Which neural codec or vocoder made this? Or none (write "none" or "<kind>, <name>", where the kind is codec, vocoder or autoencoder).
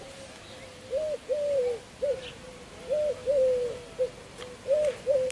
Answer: none